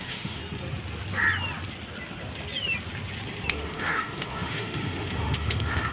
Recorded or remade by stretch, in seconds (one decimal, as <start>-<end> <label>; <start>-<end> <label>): 0.0-0.4 remade; 0.4-3.5 recorded; 3.5-5.9 remade